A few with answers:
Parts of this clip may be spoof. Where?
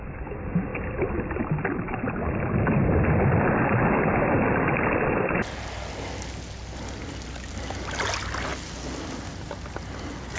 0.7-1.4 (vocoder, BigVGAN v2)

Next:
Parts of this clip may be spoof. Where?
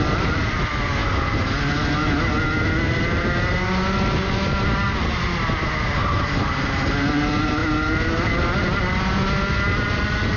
none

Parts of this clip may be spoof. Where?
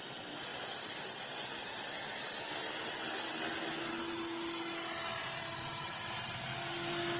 0.0-0.5 (vocoder, BigVGAN v2); 3.3-5.2; 6.1-7.2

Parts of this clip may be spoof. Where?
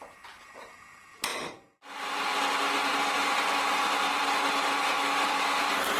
none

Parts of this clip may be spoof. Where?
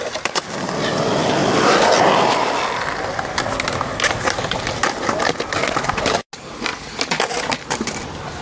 none